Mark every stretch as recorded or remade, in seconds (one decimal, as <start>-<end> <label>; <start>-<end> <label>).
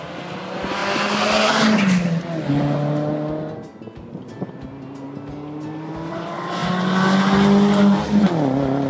0.0-8.9 recorded